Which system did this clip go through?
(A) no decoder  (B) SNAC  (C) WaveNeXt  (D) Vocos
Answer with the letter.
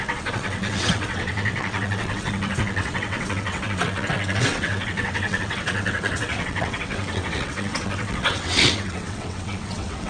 C